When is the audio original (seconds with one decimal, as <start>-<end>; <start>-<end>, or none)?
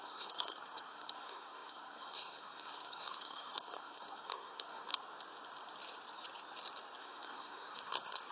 4.9-7.0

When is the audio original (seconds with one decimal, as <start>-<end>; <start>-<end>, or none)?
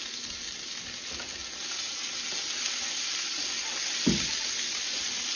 0.0-5.4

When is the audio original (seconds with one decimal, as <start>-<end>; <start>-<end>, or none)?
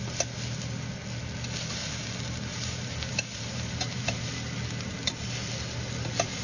0.0-2.5; 4.2-6.4